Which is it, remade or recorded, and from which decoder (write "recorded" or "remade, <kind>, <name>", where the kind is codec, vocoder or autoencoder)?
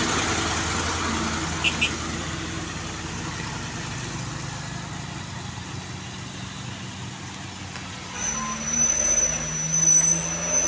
recorded